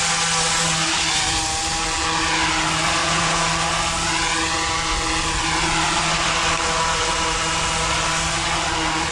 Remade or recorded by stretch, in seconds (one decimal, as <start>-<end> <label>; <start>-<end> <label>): 0.0-3.0 recorded; 3.0-3.5 remade; 3.5-9.1 recorded

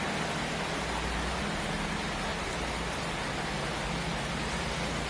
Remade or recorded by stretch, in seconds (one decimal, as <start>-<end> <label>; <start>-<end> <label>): 0.0-5.1 recorded

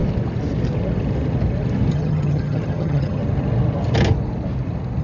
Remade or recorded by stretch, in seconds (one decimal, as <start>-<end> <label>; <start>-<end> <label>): 0.0-1.9 recorded; 1.9-3.2 remade; 3.2-5.0 recorded